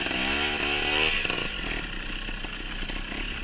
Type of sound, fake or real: real